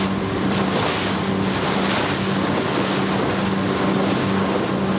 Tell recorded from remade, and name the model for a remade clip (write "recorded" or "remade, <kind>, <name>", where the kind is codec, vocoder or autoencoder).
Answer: recorded